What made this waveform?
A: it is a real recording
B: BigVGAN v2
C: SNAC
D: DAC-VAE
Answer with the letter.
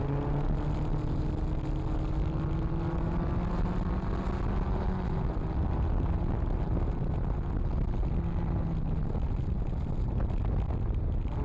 A